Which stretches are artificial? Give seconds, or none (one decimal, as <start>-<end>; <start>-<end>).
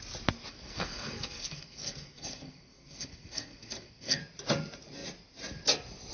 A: 0.5-4.2